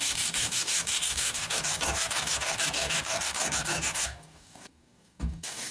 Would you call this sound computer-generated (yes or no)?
yes